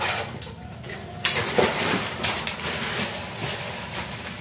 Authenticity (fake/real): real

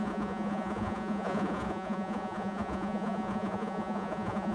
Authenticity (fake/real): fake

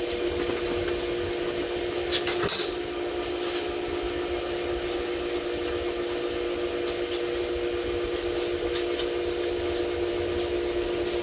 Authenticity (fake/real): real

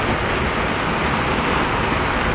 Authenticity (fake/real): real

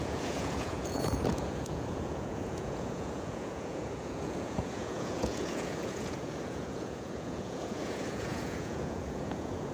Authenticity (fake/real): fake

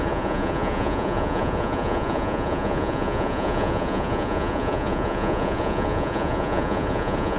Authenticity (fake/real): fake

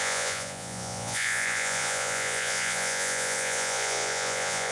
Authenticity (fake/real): fake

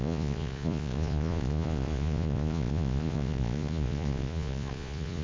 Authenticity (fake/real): fake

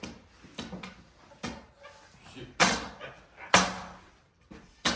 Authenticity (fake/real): real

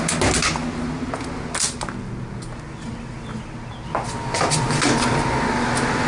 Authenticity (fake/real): real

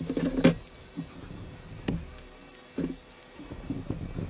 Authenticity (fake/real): real